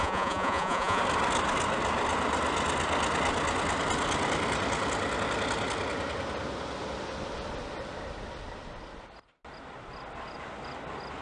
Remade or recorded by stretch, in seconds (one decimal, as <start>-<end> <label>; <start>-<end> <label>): 0.0-1.0 remade; 1.0-11.2 recorded